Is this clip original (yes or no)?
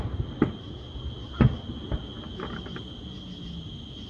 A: yes